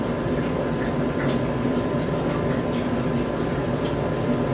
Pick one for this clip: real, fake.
fake